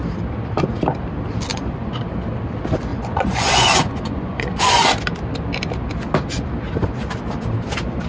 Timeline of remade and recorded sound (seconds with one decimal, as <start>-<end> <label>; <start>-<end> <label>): 0.0-1.5 recorded; 1.5-2.1 remade; 2.1-2.9 recorded; 2.9-4.9 remade; 4.9-8.1 recorded